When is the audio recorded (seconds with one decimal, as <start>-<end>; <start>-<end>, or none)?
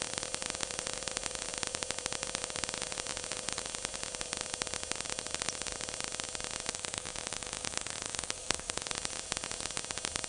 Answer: 0.0-6.7; 8.9-10.3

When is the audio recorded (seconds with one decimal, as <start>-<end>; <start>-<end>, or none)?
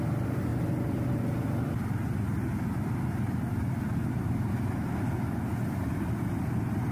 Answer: 0.0-6.9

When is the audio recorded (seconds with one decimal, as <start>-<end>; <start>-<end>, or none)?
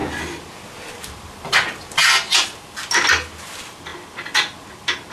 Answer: 0.0-5.1